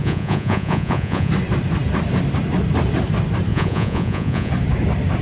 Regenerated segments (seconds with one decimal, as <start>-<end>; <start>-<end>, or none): 0.0-1.3; 3.5-4.5